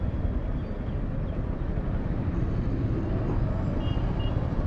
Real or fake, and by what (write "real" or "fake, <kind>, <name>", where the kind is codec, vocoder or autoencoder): real